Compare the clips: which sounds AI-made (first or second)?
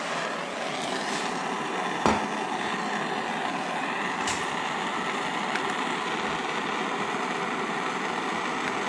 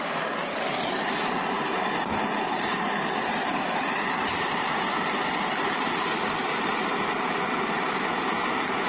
second